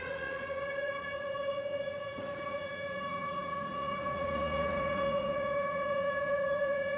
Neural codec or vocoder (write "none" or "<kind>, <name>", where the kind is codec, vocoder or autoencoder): vocoder, Vocos